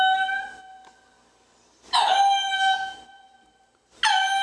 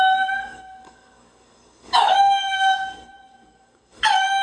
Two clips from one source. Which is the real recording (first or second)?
first